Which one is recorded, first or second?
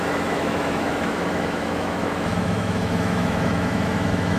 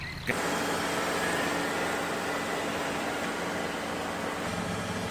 second